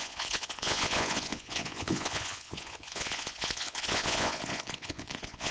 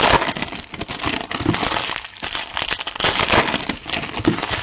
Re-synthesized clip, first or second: first